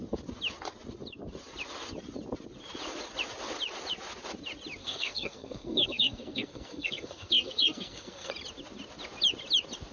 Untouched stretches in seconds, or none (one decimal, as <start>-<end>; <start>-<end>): 0.0-4.8; 8.3-9.9